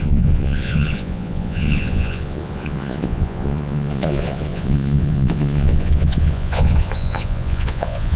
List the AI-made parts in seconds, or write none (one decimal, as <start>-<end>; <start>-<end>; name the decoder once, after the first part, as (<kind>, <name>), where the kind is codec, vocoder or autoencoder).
0.0-8.2 (vocoder, Vocos)